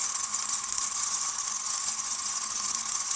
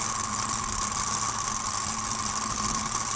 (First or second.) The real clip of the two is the second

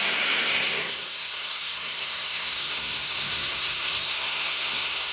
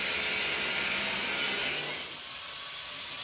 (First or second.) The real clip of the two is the second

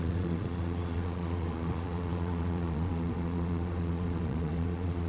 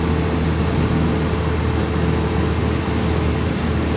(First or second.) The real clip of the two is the second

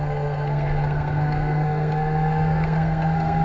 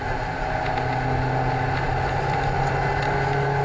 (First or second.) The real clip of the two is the second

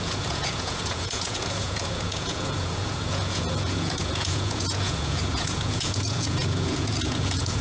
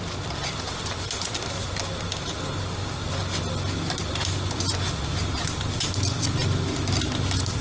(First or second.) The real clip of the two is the second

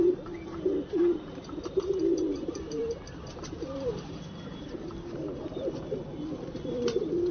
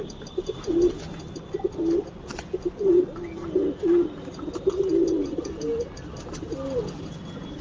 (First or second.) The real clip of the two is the second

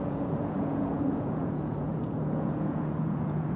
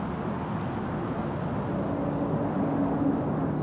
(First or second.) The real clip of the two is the second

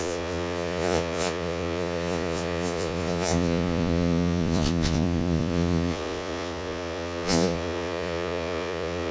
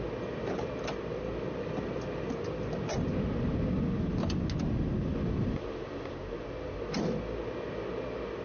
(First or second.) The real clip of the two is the second